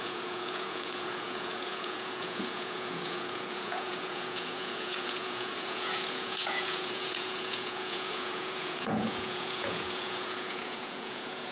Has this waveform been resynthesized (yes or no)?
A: yes